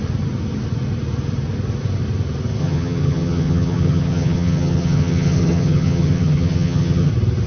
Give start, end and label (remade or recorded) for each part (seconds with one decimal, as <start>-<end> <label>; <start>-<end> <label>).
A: 0.0-2.6 recorded; 2.6-7.1 remade; 7.1-7.5 recorded